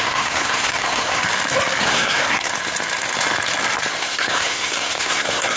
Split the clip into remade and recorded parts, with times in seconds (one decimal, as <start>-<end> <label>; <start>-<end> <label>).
0.0-1.2 remade; 1.2-1.8 recorded; 1.8-2.5 remade; 2.5-3.9 recorded; 3.9-5.6 remade